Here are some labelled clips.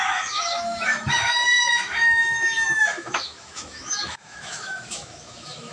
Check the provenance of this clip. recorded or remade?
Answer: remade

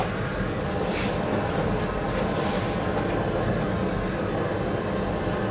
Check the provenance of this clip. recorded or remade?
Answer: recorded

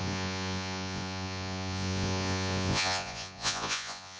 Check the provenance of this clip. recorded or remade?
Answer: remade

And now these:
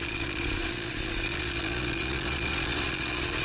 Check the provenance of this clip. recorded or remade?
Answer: remade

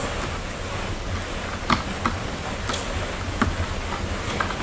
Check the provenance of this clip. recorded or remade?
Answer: recorded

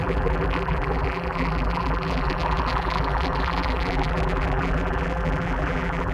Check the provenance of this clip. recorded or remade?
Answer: remade